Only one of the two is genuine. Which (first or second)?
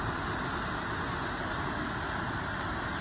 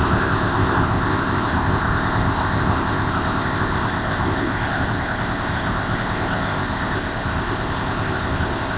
first